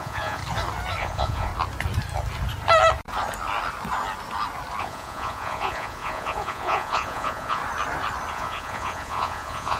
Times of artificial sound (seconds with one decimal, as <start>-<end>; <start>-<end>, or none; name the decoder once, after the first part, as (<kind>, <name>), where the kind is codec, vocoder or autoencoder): 0.0-0.4 (vocoder, Vocos); 1.0-1.5; 4.8-7.6; 8.3-9.8